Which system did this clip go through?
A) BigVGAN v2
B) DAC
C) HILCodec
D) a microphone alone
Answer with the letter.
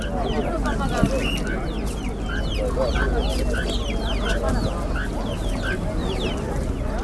D